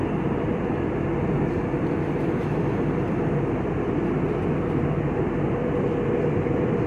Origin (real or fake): real